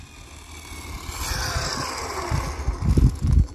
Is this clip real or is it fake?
real